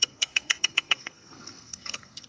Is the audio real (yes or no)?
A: no